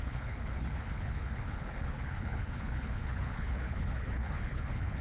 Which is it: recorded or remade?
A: remade